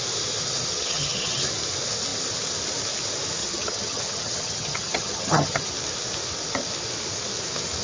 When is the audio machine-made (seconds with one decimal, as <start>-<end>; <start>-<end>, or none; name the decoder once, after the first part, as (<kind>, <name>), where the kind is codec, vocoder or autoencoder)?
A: 0.7-1.4 (vocoder, HiFi-GAN); 3.4-5.7

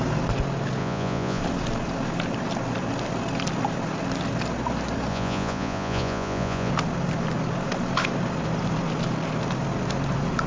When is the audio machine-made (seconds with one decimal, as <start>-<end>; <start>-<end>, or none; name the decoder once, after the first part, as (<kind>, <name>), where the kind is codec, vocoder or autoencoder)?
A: 0.8-1.4 (vocoder, Vocos); 5.1-6.7

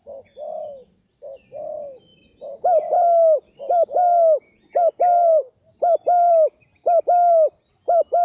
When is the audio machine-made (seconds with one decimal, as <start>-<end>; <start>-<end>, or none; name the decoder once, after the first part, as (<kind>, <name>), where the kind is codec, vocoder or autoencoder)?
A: none

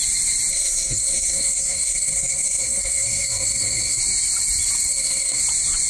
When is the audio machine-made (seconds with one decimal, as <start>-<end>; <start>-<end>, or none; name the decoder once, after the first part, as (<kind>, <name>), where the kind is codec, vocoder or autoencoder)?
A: 0.5-4.0 (codec, SNAC); 4.9-5.4

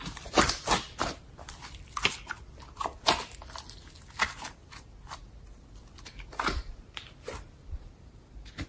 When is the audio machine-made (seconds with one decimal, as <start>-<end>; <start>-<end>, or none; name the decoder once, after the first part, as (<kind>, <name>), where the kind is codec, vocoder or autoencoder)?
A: none

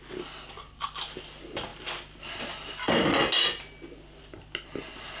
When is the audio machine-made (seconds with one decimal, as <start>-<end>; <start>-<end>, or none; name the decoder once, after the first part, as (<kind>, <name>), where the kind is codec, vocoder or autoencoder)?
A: none

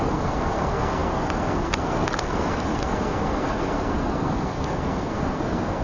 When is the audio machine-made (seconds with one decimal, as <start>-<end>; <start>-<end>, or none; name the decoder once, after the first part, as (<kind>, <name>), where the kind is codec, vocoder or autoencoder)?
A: 0.0-5.8 (codec, SNAC)